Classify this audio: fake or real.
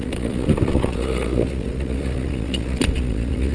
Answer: fake